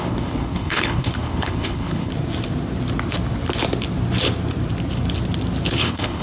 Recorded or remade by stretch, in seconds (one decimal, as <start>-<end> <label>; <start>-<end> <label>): 0.0-2.1 remade; 2.1-5.8 recorded; 5.8-6.2 remade